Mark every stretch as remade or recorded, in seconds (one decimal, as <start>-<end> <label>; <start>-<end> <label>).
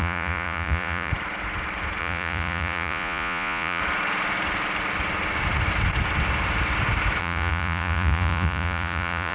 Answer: 0.0-1.1 remade; 1.1-2.0 recorded; 2.0-3.8 remade; 3.8-7.2 recorded; 7.2-9.3 remade